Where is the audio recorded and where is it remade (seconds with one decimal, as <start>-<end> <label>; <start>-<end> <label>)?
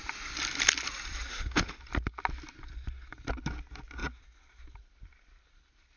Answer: 0.0-1.3 recorded; 1.3-1.8 remade; 1.8-6.0 recorded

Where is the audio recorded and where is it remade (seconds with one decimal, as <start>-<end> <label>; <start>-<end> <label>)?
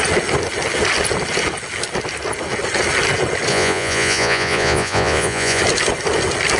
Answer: 0.0-3.5 recorded; 3.5-5.6 remade; 5.6-6.6 recorded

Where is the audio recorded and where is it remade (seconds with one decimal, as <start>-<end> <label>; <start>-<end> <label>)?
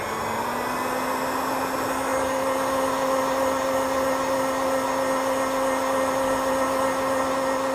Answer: 0.0-7.7 recorded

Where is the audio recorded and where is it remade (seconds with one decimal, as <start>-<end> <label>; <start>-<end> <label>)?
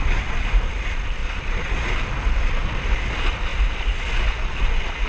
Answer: 0.0-1.2 recorded; 1.2-1.9 remade; 1.9-5.1 recorded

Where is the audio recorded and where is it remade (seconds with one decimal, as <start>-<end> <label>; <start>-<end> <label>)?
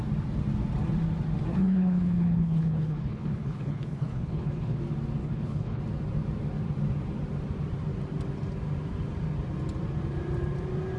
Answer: 0.0-1.5 recorded; 1.5-4.8 remade; 4.8-5.2 recorded; 5.2-5.8 remade; 5.8-11.0 recorded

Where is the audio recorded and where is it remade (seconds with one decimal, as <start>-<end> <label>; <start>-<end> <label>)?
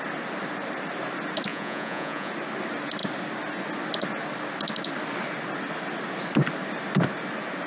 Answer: 0.0-1.5 recorded; 1.5-2.3 remade; 2.3-7.7 recorded